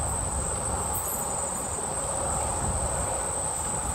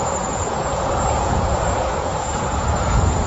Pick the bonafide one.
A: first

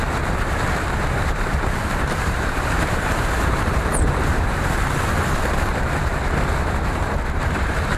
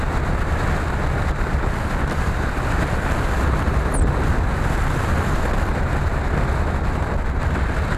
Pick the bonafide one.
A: second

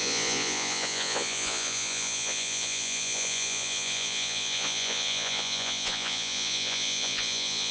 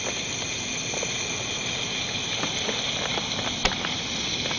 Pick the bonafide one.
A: second